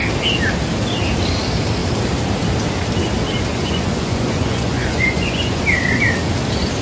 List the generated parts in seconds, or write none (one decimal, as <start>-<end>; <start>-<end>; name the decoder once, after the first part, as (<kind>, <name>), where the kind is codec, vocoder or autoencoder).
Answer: 3.5-5.6 (vocoder, Vocos)